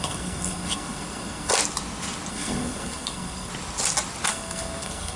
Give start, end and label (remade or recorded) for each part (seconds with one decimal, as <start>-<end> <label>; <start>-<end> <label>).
0.0-1.5 remade; 1.5-2.3 recorded; 2.3-3.5 remade; 3.5-4.3 recorded; 4.3-5.2 remade

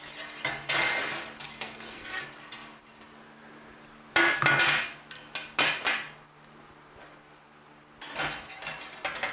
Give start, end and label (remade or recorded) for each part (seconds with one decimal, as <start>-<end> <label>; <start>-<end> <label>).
0.0-1.5 recorded; 1.5-2.2 remade; 2.2-9.3 recorded

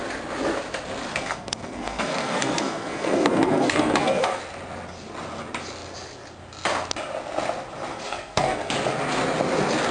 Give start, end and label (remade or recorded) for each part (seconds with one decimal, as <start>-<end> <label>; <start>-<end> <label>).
0.0-1.1 recorded; 1.1-4.4 remade; 4.4-7.9 recorded; 7.9-8.7 remade; 8.7-9.9 recorded

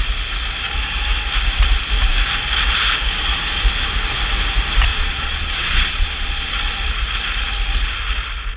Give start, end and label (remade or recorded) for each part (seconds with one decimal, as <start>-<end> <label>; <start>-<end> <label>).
0.0-4.9 recorded; 4.9-6.5 remade; 6.5-8.6 recorded

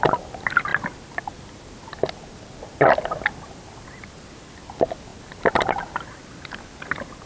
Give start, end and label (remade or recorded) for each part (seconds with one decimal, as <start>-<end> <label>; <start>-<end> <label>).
0.0-7.3 recorded